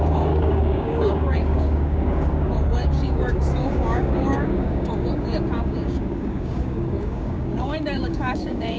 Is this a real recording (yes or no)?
no